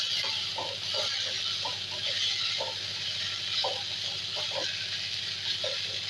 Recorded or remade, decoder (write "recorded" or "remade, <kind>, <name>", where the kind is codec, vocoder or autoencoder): recorded